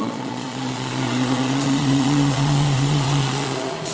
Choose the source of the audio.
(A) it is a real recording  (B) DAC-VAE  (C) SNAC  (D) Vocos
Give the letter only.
D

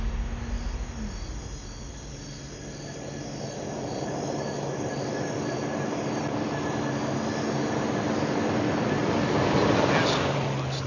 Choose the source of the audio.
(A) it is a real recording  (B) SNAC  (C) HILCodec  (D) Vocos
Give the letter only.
A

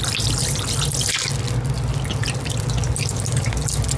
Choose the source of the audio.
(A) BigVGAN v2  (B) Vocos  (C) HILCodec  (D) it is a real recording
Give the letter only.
D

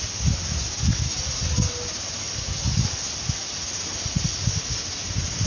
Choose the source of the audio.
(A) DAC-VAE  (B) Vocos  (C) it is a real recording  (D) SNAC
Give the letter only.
C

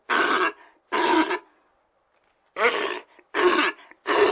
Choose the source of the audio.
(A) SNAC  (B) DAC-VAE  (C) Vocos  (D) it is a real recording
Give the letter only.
D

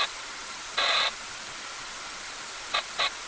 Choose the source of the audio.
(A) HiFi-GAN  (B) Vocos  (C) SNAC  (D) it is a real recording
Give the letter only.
B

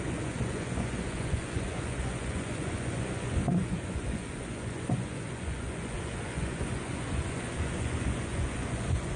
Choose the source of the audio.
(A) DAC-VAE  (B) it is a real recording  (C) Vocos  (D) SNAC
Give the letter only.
C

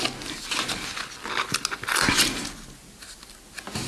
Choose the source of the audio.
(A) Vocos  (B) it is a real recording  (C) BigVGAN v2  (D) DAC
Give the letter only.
B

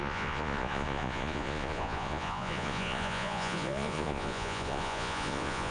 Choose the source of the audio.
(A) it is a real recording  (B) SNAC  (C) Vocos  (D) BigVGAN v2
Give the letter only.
C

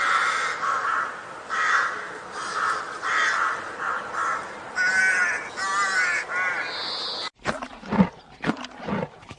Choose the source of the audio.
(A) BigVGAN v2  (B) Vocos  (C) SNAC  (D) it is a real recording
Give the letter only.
D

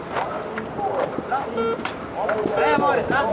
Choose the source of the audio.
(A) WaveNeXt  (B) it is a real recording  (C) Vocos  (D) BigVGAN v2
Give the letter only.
B